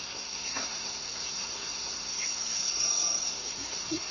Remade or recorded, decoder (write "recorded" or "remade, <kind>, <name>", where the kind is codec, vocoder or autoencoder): remade, codec, SNAC